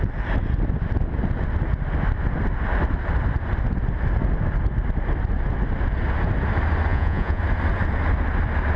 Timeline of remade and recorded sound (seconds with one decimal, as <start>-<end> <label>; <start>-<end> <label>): 0.0-6.9 recorded; 6.9-7.4 remade; 7.4-8.8 recorded